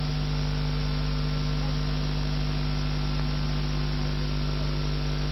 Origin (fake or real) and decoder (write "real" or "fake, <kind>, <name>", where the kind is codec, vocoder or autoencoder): real